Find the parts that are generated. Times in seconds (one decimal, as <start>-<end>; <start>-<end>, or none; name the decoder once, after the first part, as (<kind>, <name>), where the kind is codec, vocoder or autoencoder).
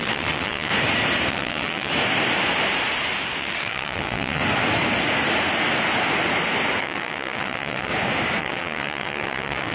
0.0-0.7 (vocoder, WaveNeXt); 1.3-1.9; 3.4-4.4; 6.8-7.9; 8.4-9.7